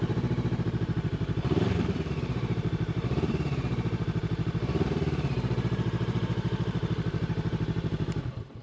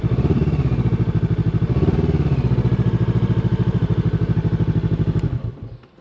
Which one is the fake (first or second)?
first